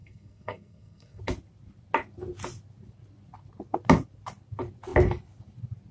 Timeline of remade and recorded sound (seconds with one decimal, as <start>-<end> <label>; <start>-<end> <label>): 0.0-1.2 remade; 1.2-5.9 recorded